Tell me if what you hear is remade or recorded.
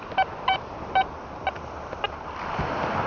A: recorded